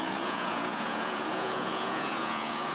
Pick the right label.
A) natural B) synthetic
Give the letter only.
B